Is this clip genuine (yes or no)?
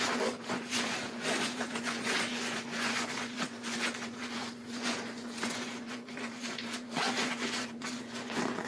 no